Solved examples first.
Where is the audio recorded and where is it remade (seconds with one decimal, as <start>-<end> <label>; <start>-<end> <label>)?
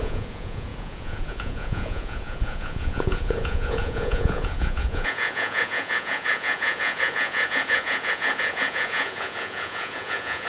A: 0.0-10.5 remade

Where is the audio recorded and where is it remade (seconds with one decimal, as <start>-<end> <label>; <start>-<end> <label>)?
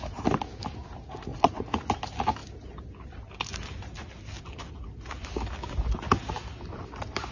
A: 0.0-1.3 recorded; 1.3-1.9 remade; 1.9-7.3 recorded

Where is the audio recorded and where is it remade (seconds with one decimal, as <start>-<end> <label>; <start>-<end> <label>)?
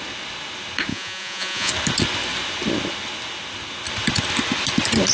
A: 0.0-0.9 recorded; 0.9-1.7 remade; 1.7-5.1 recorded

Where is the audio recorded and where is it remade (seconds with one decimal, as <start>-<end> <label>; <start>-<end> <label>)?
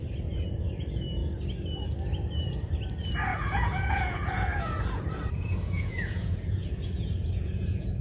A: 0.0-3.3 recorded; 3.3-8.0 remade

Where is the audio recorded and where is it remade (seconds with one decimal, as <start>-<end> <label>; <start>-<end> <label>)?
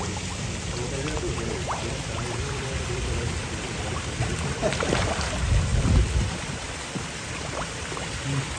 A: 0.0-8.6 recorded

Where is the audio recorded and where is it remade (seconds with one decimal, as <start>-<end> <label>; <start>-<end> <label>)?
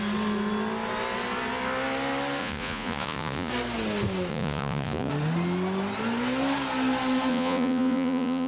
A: 0.0-2.4 recorded; 2.4-3.5 remade; 3.5-4.3 recorded; 4.3-5.1 remade; 5.1-7.3 recorded; 7.3-8.5 remade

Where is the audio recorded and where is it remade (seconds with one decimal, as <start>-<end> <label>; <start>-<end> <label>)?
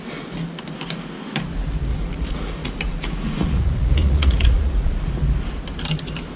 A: 0.0-1.9 recorded; 1.9-5.1 remade; 5.1-6.4 recorded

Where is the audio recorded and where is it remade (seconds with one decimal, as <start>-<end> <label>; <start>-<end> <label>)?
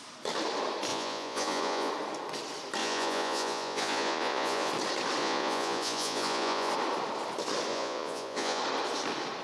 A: 0.0-0.9 recorded; 0.9-1.9 remade; 1.9-2.8 recorded; 2.8-4.7 remade; 4.7-5.2 recorded; 5.2-6.7 remade; 6.7-7.7 recorded; 7.7-8.6 remade; 8.6-9.4 recorded